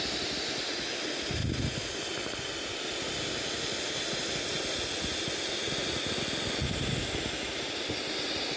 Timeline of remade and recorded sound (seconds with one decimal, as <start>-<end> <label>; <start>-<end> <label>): 0.0-8.6 recorded